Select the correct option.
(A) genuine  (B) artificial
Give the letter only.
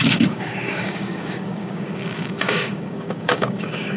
B